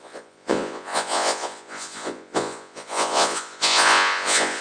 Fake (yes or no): yes